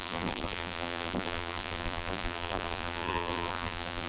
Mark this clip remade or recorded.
remade